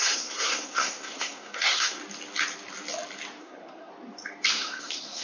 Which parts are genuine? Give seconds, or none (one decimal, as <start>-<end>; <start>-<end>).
2.0-3.4; 3.9-4.5